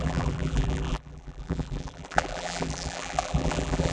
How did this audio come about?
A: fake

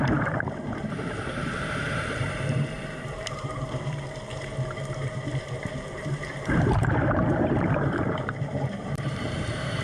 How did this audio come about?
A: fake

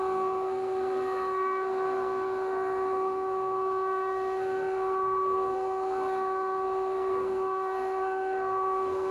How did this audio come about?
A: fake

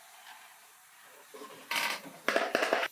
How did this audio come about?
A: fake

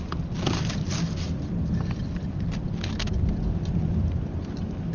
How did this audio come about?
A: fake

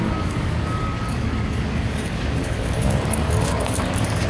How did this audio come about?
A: fake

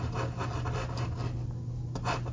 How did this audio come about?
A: real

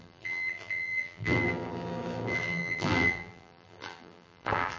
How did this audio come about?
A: fake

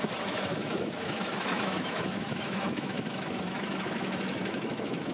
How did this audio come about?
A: fake